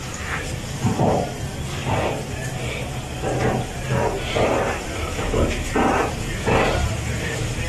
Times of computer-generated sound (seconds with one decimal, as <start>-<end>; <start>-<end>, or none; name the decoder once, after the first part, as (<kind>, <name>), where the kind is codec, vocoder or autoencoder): 4.9-5.7 (autoencoder, DAC-VAE)